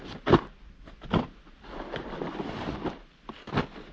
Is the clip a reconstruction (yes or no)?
no